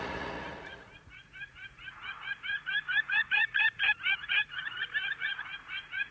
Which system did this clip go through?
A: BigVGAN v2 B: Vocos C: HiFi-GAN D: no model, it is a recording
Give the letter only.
B